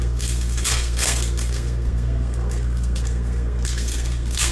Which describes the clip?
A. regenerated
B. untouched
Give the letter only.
A